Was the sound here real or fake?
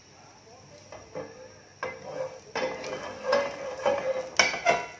real